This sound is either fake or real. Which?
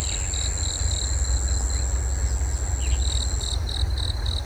real